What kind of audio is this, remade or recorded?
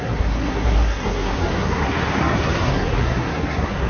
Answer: remade